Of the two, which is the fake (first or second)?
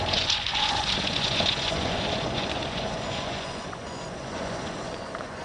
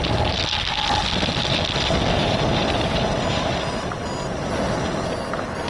first